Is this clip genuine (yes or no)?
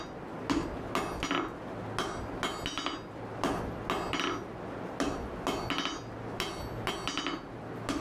yes